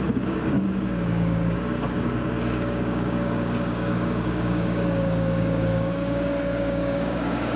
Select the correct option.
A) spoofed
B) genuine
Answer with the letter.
A